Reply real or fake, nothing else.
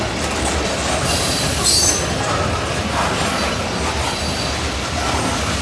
real